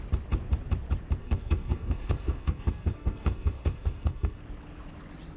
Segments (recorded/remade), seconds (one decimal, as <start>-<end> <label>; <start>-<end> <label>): 0.0-1.2 recorded; 1.2-4.4 remade; 4.4-5.4 recorded